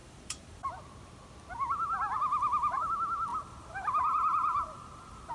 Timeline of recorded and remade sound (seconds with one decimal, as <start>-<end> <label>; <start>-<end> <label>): 0.0-0.7 remade; 0.7-2.3 recorded; 2.3-2.9 remade; 2.9-3.3 recorded; 3.3-5.3 remade